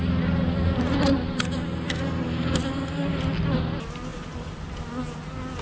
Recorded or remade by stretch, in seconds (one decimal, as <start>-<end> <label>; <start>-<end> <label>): 0.0-5.6 recorded